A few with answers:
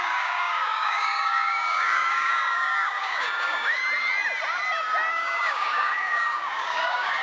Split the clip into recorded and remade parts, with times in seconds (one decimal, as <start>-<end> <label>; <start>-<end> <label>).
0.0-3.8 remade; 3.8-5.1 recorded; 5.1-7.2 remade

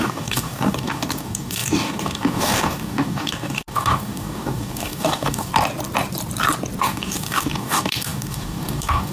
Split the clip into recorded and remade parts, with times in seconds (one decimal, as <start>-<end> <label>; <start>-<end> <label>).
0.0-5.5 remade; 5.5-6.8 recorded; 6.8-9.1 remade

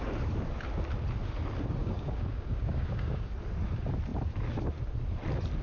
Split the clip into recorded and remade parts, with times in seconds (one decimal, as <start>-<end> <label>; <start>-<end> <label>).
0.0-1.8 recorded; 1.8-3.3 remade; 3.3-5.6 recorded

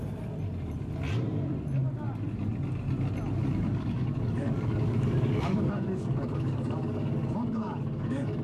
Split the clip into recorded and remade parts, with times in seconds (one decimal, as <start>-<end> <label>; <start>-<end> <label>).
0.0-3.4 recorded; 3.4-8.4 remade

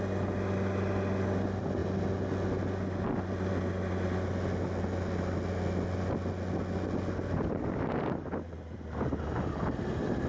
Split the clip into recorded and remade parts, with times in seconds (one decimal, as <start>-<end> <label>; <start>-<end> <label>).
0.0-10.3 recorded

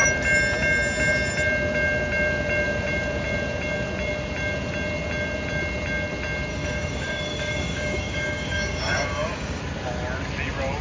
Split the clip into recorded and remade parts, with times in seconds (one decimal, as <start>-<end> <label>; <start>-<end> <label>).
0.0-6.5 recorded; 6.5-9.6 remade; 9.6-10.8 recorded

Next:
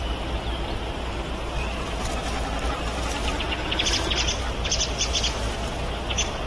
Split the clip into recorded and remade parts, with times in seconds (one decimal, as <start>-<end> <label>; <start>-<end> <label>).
0.0-6.5 recorded